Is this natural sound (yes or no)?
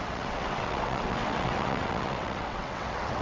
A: no